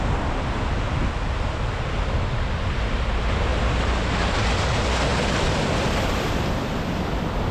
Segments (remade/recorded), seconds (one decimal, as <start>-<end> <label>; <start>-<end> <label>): 0.0-5.1 recorded; 5.1-7.0 remade; 7.0-7.5 recorded